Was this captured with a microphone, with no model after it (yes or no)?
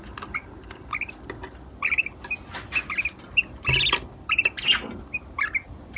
yes